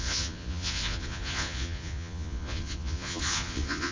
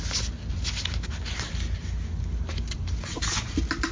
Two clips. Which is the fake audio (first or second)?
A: first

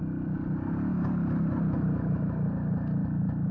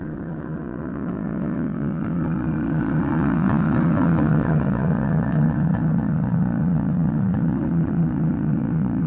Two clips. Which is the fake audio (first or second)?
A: second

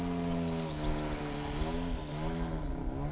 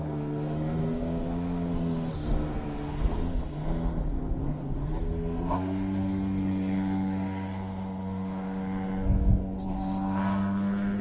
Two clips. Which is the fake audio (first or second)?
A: second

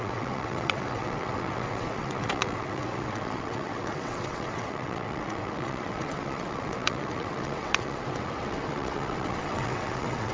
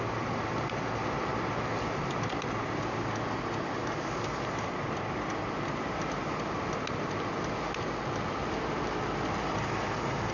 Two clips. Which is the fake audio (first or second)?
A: first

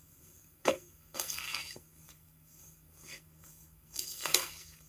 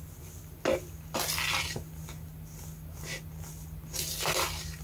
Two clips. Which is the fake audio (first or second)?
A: first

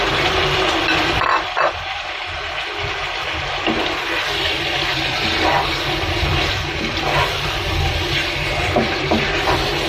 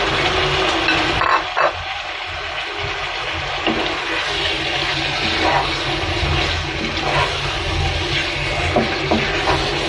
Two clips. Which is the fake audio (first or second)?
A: first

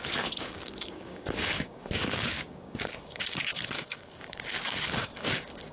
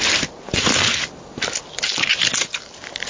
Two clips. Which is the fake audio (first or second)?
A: first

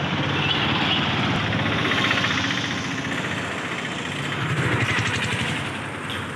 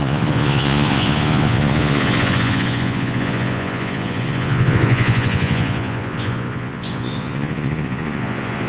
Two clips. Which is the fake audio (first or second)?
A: second